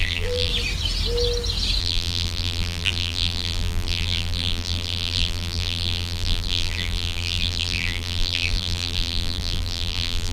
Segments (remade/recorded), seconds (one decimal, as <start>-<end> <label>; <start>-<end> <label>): 0.0-0.5 remade; 0.5-1.8 recorded; 1.8-10.3 remade